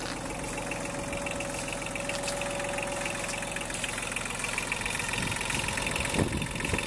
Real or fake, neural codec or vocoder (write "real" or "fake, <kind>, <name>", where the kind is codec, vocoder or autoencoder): real